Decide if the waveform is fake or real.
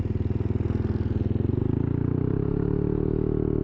real